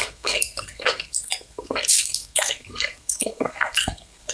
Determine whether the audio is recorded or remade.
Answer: remade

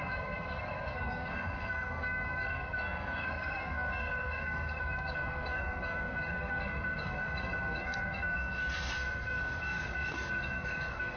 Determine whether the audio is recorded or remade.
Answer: remade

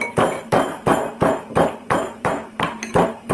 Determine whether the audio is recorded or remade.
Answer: remade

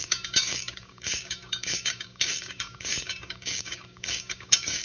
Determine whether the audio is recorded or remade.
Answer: remade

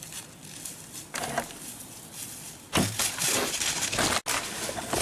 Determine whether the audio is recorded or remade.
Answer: recorded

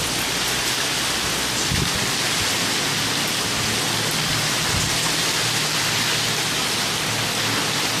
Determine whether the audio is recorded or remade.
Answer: recorded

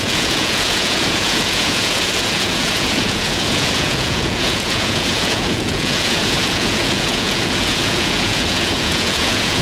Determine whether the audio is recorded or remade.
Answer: remade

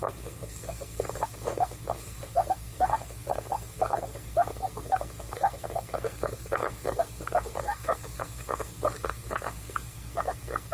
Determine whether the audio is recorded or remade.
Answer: remade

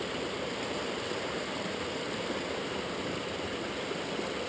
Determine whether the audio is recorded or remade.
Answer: recorded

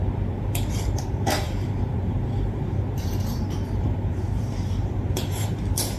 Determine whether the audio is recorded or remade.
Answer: remade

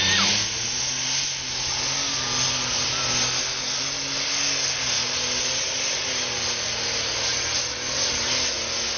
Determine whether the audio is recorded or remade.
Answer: recorded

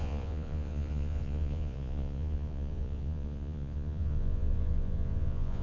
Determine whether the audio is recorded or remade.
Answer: remade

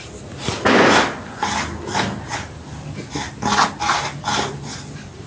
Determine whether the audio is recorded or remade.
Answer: recorded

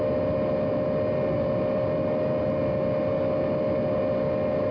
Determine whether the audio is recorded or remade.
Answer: recorded